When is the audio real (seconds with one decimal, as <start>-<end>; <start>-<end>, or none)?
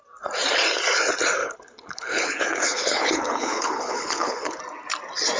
0.0-1.4; 4.6-5.4